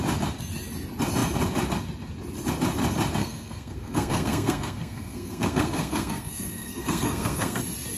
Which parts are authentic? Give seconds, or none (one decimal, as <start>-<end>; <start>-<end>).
0.0-3.2; 7.6-8.0